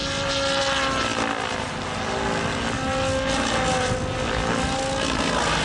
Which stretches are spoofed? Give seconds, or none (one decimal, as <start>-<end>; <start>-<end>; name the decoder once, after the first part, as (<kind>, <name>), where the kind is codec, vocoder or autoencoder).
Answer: none